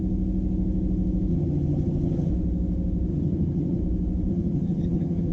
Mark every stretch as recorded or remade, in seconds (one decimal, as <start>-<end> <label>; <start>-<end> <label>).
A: 0.0-1.3 recorded; 1.3-2.3 remade; 2.3-3.1 recorded; 3.1-3.8 remade; 3.8-4.3 recorded; 4.3-5.3 remade